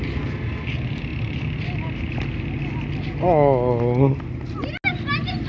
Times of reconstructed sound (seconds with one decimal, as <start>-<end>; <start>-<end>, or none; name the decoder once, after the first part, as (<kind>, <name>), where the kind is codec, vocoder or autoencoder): none